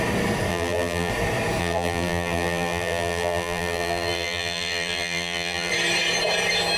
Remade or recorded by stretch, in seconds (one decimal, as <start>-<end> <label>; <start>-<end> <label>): 0.0-0.5 recorded; 0.5-1.1 remade; 1.1-1.6 recorded; 1.6-5.7 remade; 5.7-6.8 recorded